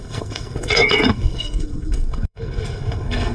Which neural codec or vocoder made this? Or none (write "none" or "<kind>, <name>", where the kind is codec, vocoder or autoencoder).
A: codec, SNAC